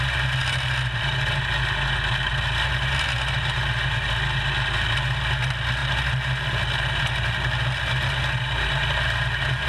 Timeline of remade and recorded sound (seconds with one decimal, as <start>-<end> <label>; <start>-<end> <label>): 0.0-9.7 recorded